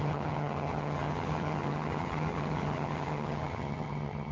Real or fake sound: fake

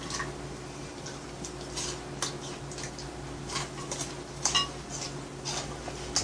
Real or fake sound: real